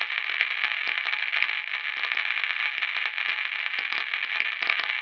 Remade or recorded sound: recorded